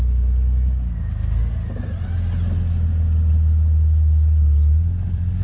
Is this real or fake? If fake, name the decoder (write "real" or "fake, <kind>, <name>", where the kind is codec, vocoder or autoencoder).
real